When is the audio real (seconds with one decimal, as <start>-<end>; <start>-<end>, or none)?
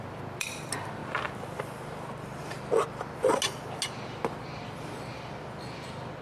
0.0-6.2